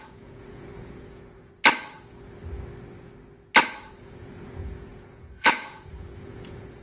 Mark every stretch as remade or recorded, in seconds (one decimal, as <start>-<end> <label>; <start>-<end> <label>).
0.0-1.5 remade; 1.5-3.9 recorded; 3.9-6.8 remade